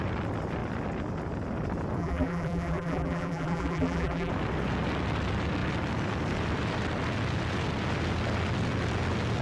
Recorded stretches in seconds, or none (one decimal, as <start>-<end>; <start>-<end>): 0.0-2.0; 4.3-9.4